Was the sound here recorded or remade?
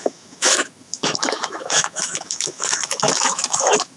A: remade